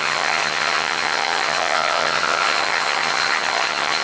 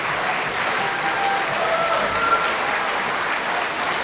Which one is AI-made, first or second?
first